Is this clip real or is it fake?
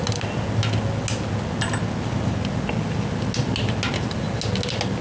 real